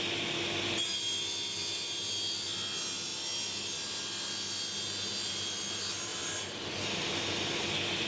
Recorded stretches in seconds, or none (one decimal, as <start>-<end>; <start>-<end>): 0.0-6.1; 6.6-8.1